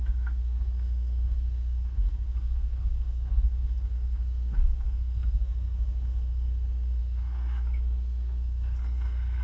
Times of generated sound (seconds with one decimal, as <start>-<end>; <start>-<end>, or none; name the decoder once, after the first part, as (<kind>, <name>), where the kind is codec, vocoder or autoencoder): 0.0-9.4 (codec, SNAC)